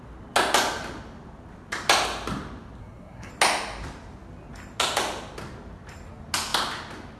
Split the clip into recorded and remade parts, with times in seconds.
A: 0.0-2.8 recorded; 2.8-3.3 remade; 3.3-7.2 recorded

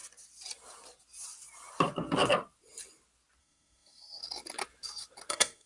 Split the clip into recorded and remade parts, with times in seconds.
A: 0.0-3.4 recorded; 3.4-4.2 remade; 4.2-5.3 recorded; 5.3-5.7 remade

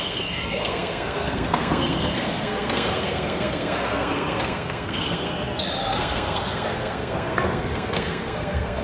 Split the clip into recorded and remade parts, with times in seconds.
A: 0.0-8.8 remade

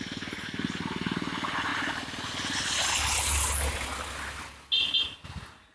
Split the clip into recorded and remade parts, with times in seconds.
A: 0.0-5.7 recorded

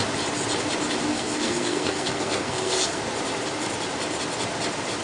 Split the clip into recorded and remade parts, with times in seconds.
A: 0.0-1.1 recorded; 1.1-3.0 remade; 3.0-5.0 recorded

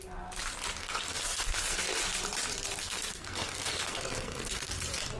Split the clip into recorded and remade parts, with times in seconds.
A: 0.0-0.8 recorded; 0.8-1.8 remade; 1.8-2.8 recorded; 2.8-4.7 remade; 4.7-5.2 recorded

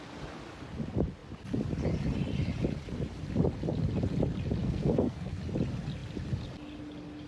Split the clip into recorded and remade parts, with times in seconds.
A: 0.0-4.6 recorded; 4.6-5.4 remade; 5.4-7.3 recorded

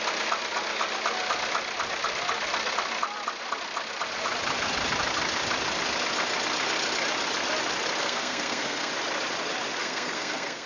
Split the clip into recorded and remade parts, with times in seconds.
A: 0.0-8.0 recorded; 8.0-8.9 remade; 8.9-9.8 recorded; 9.8-10.7 remade